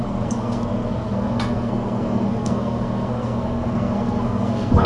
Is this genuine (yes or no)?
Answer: no